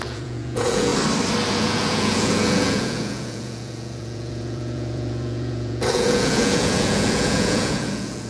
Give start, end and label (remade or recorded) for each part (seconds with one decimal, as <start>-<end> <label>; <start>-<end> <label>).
0.0-0.9 remade; 0.9-1.5 recorded; 1.5-8.3 remade